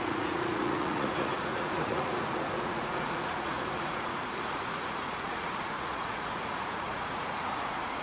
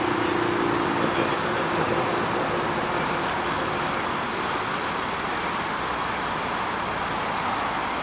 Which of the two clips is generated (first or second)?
first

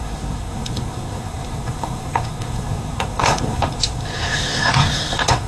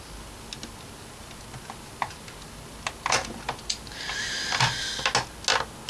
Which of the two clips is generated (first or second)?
first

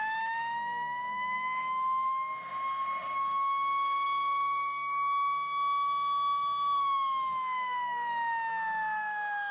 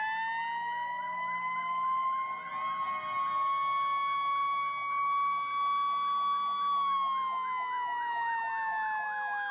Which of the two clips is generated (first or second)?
first